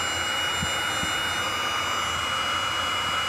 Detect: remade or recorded recorded